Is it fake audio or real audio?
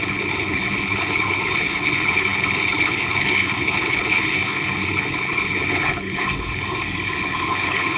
fake